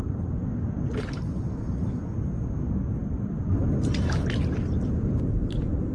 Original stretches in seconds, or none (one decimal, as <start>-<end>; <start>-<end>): 0.0-5.9